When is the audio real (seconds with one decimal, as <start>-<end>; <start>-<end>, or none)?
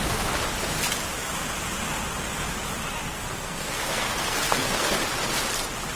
0.0-3.1; 4.9-6.0